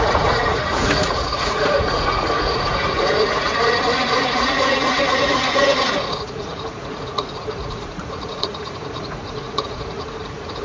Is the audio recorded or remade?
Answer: remade